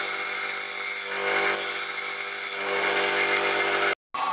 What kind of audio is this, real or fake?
real